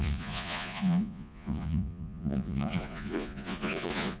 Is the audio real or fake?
fake